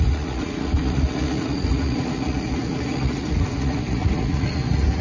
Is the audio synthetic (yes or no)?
yes